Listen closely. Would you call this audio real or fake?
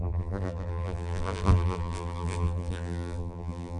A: fake